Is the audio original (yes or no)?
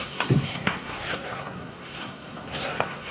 no